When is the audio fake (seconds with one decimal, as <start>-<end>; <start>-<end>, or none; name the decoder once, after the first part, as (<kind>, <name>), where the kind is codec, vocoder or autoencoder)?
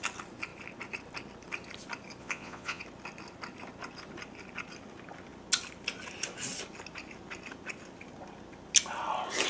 2.2-2.8 (vocoder, Vocos)